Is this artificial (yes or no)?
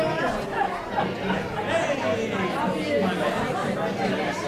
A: no